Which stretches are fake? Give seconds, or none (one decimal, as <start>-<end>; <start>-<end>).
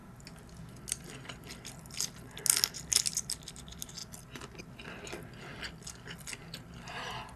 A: none